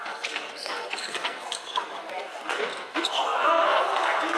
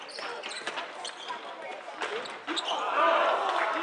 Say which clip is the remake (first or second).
first